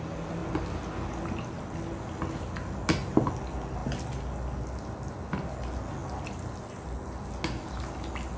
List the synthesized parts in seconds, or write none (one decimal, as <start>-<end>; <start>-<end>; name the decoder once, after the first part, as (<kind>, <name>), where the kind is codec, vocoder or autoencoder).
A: none